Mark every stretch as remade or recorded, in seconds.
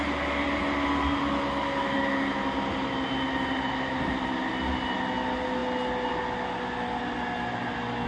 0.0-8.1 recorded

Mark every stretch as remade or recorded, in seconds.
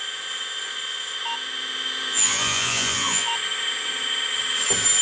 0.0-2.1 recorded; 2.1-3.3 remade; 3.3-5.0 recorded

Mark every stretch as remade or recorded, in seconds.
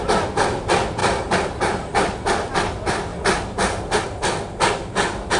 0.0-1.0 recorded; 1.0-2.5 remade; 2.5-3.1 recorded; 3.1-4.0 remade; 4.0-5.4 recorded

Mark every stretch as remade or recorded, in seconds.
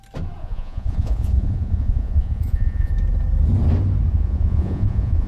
0.0-0.4 recorded; 0.4-2.9 remade; 2.9-4.1 recorded; 4.1-5.3 remade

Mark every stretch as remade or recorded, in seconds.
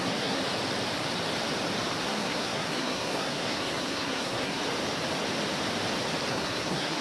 0.0-0.4 remade; 0.4-2.0 recorded; 2.0-4.6 remade; 4.6-6.3 recorded; 6.3-7.0 remade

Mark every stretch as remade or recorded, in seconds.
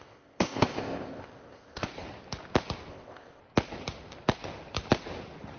0.0-1.9 remade; 1.9-2.9 recorded; 2.9-3.4 remade; 3.4-5.6 recorded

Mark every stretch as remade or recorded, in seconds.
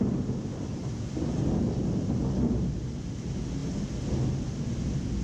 0.0-5.2 recorded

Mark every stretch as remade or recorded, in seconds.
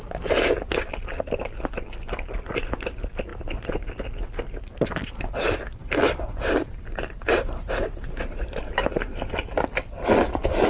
0.0-5.8 recorded; 5.8-9.1 remade; 9.1-10.7 recorded